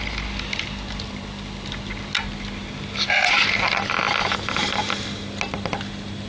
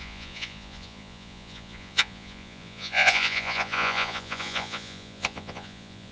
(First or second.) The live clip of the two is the first